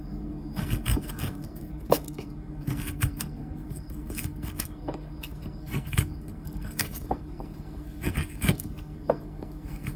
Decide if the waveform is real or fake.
fake